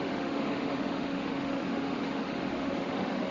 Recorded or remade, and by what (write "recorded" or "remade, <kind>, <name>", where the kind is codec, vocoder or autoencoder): remade, autoencoder, DAC-VAE